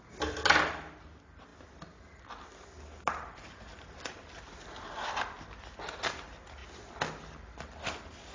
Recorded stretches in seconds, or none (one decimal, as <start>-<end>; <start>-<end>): 0.0-8.3